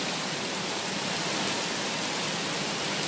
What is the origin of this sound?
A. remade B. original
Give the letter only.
B